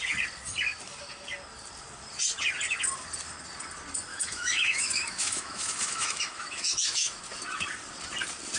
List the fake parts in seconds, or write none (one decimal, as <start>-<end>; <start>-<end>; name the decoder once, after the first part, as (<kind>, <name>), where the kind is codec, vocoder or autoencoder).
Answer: 4.1-7.2 (autoencoder, DAC-VAE)